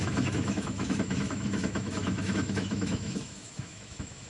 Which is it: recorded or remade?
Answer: remade